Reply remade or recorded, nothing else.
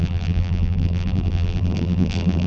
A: remade